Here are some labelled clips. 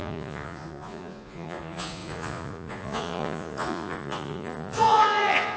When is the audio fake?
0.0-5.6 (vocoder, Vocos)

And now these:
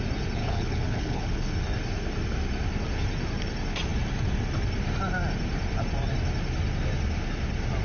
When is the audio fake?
0.4-1.6 (codec, HILCodec)

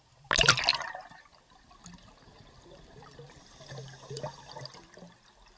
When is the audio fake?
0.7-1.3 (vocoder, BigVGAN v2)

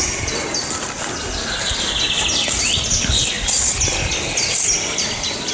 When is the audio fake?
none

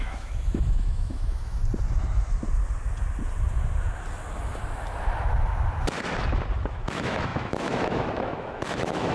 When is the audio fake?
0.0-1.6 (autoencoder, DAC-VAE); 6.7-9.1